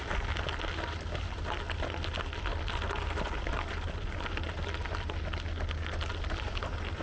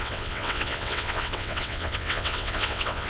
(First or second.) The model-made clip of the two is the second